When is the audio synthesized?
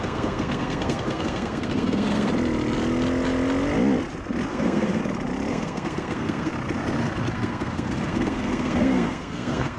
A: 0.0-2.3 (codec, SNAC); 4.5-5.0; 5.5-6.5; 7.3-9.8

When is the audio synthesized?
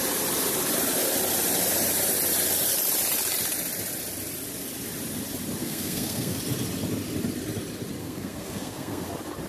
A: 5.6-6.4 (codec, SNAC); 8.0-9.1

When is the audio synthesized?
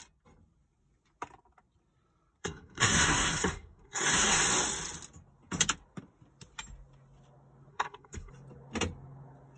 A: 2.4-4.4 (codec, SNAC); 7.7-8.3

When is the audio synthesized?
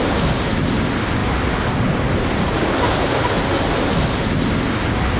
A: none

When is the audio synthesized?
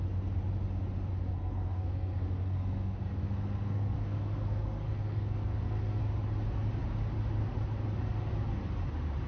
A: 1.3-6.0 (codec, SNAC)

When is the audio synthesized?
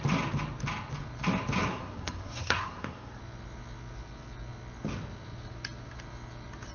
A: 1.6-3.2 (codec, SNAC)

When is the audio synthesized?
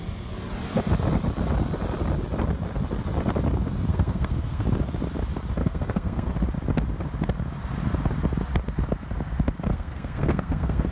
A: 3.9-4.6 (codec, SNAC); 5.6-6.3; 9.7-10.9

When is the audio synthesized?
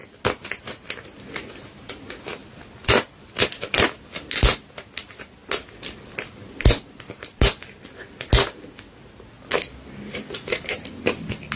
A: none